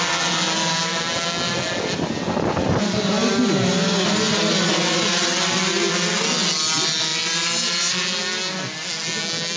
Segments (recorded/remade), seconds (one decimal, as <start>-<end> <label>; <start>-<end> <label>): 0.0-9.6 recorded